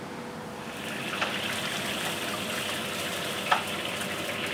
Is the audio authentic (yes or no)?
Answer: yes